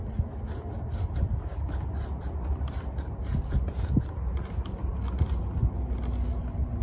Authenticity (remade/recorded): recorded